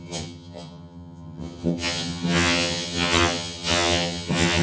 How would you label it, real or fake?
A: fake